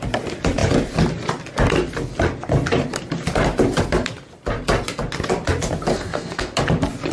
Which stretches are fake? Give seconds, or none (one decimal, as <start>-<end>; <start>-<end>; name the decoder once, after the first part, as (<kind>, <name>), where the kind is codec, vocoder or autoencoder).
5.9-6.6 (codec, SNAC)